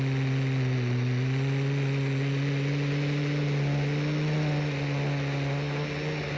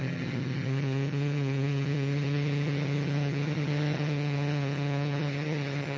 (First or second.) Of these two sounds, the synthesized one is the second